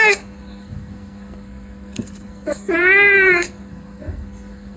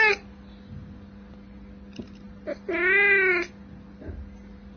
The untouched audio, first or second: second